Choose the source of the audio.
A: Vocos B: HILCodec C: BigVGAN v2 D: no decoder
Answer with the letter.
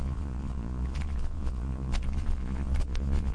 A